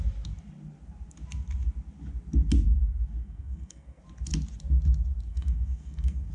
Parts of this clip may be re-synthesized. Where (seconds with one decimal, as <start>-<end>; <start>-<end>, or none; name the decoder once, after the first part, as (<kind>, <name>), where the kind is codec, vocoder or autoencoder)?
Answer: 3.2-4.0 (codec, SNAC); 5.3-6.3